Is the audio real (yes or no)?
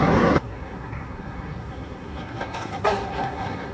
no